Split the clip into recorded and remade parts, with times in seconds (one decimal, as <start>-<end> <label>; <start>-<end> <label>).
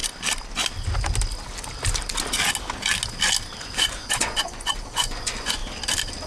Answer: 0.0-3.6 recorded; 3.6-5.6 remade; 5.6-6.3 recorded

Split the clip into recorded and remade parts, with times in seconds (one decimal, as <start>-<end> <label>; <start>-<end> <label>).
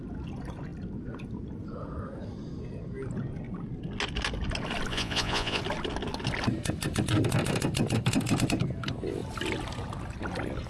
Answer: 0.0-4.9 recorded; 4.9-5.6 remade; 5.6-10.7 recorded